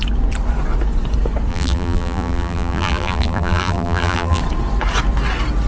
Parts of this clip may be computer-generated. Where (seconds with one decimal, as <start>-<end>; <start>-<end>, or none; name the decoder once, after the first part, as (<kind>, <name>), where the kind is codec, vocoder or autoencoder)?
1.5-4.4 (vocoder, BigVGAN v2)